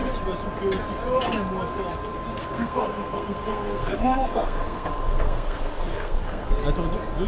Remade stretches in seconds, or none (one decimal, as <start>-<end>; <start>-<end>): 2.4-6.5